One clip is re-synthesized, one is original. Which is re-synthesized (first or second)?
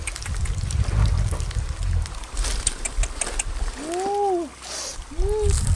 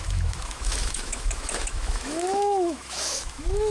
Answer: second